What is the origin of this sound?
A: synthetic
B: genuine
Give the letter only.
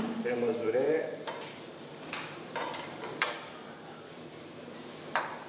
A